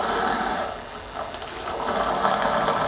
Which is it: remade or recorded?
recorded